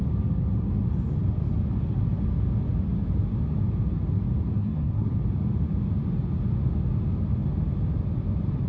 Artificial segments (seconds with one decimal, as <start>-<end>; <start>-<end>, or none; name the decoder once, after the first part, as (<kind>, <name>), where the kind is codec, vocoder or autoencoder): 4.6-5.1 (codec, SNAC)